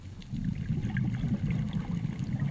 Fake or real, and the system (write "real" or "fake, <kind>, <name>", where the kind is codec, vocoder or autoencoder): real